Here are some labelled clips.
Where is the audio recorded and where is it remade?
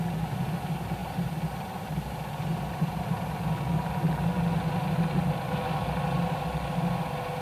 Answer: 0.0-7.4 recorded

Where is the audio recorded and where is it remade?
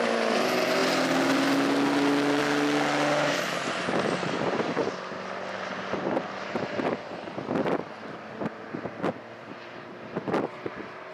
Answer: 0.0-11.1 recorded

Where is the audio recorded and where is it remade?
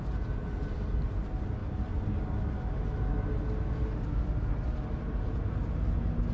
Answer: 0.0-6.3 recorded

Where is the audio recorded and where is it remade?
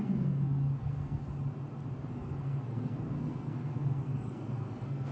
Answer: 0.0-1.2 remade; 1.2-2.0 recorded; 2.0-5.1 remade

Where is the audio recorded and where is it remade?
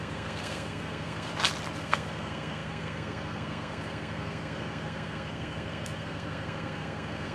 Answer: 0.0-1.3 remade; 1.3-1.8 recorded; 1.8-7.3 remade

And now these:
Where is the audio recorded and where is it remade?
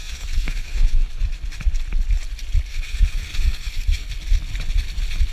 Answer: 0.0-1.1 remade; 1.1-2.7 recorded; 2.7-4.1 remade; 4.1-5.3 recorded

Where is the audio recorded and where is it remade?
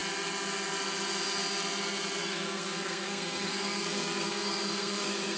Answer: 0.0-2.2 recorded; 2.2-5.4 remade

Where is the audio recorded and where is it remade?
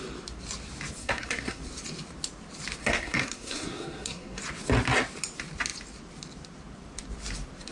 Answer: 0.0-1.0 recorded; 1.0-1.6 remade; 1.6-2.8 recorded; 2.8-4.4 remade; 4.4-7.7 recorded